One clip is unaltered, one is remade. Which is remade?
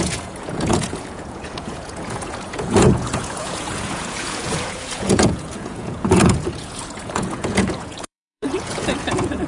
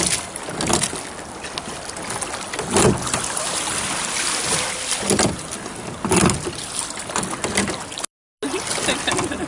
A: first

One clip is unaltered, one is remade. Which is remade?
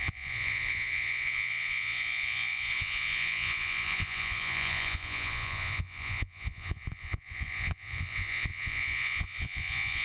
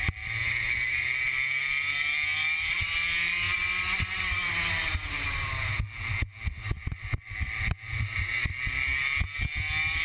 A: first